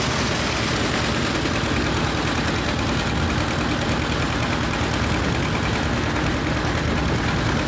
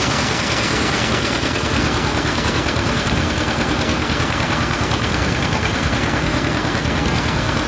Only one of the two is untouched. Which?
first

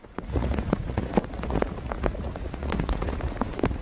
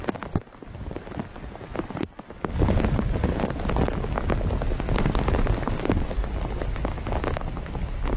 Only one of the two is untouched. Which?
second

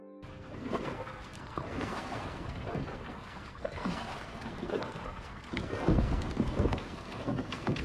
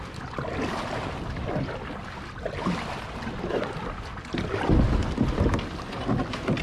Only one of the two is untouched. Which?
second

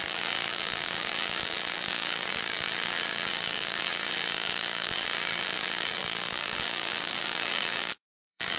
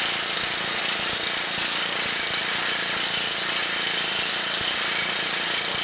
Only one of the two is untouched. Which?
second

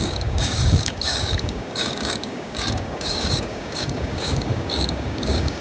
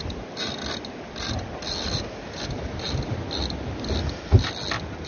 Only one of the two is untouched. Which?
second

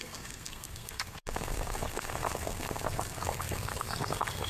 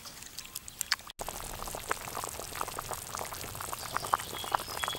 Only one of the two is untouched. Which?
second